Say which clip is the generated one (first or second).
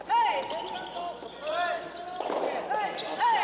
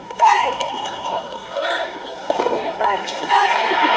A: second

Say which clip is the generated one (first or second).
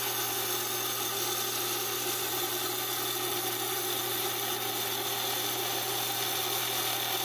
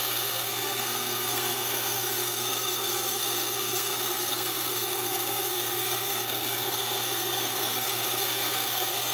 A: second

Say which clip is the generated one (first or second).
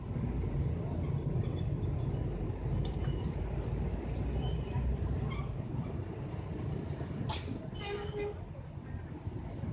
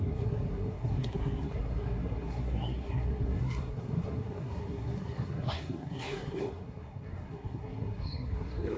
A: second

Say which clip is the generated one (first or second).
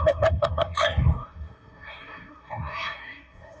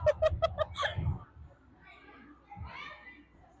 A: first